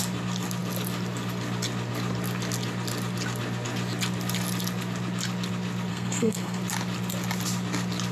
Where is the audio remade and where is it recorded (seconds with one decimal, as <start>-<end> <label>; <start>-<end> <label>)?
0.0-5.9 recorded; 5.9-6.6 remade; 6.6-8.1 recorded